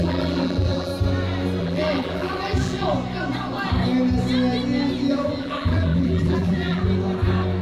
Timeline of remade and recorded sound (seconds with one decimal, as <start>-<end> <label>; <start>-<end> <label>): 0.0-0.9 remade; 0.9-1.6 recorded; 1.6-2.9 remade; 2.9-5.1 recorded; 5.1-6.8 remade; 6.8-7.6 recorded